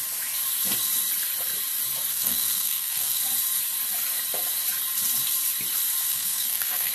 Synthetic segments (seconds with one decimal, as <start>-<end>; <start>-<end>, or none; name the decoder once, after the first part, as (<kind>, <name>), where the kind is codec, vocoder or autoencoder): 2.1-3.2 (codec, SNAC); 6.1-6.9